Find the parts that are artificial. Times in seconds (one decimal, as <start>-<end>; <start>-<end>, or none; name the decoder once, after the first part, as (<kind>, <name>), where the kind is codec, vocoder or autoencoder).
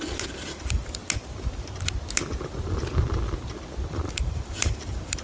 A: 0.0-1.0 (vocoder, BigVGAN v2); 4.1-5.2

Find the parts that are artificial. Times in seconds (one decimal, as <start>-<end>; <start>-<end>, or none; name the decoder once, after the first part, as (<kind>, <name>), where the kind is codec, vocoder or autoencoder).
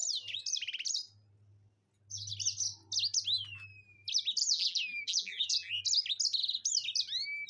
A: 4.4-5.7 (vocoder, BigVGAN v2)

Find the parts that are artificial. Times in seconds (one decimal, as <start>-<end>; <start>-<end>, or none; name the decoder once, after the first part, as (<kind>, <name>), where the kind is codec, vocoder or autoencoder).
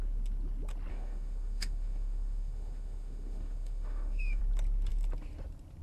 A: 0.9-4.4 (autoencoder, DAC-VAE)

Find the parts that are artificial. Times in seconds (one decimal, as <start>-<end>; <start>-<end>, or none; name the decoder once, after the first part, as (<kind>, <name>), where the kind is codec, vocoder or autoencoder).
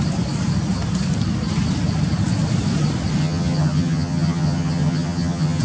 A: 3.2-5.6 (vocoder, HiFi-GAN)